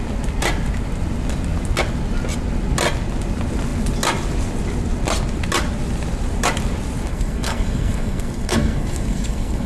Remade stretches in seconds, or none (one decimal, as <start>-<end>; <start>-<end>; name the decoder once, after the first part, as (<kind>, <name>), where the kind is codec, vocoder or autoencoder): 7.1-9.7 (codec, SNAC)